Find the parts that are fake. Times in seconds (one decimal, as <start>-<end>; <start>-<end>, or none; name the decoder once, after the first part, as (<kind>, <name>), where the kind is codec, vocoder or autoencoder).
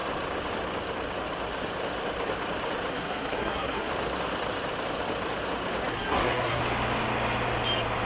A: 2.9-3.9 (codec, SNAC); 5.9-6.6